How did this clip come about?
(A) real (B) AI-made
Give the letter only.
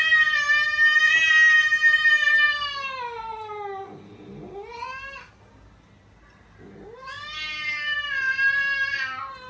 A